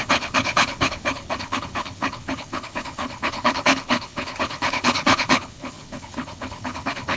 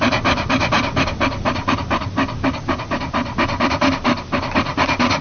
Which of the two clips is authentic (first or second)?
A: second